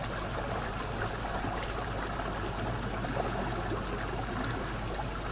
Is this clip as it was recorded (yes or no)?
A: yes